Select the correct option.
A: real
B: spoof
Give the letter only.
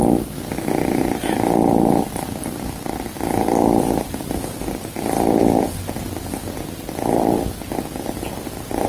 A